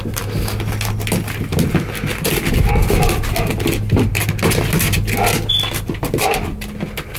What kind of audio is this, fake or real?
real